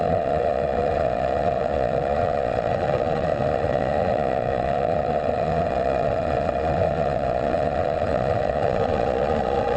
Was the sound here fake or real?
fake